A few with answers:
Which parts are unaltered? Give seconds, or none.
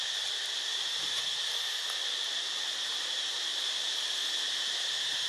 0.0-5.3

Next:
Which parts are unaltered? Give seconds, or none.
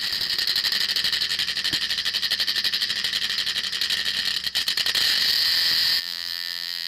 0.0-6.0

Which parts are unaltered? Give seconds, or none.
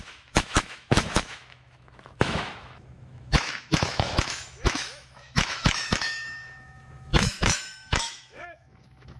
none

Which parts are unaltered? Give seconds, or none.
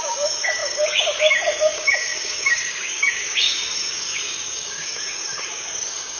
none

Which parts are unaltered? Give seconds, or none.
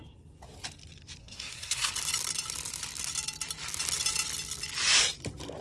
0.0-1.2; 1.9-5.6